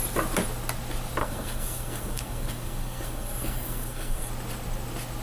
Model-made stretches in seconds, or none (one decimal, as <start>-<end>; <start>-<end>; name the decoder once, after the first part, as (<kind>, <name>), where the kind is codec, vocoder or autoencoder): 1.2-4.3 (codec, SNAC)